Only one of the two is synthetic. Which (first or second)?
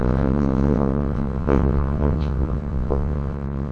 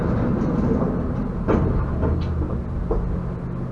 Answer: first